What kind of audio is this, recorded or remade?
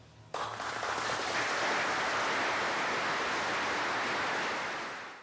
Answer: recorded